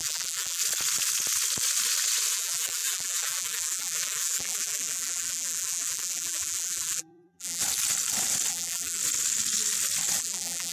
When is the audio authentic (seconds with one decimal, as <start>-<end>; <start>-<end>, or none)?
0.6-2.3; 7.6-8.5; 9.0-10.2